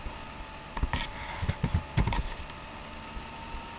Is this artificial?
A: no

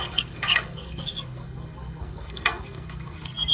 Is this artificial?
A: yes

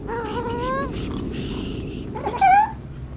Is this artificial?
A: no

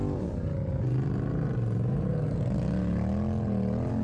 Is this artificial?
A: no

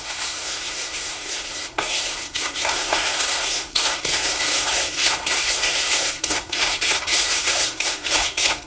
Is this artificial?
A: yes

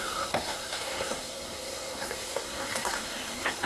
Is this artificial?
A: yes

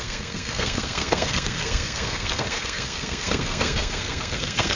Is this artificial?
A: yes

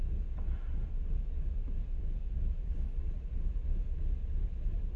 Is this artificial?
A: no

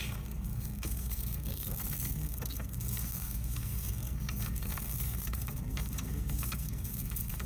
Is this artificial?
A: yes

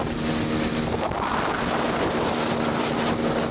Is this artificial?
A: no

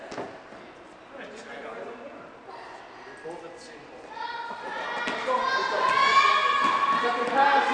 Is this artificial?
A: no